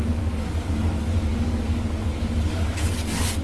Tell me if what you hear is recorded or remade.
remade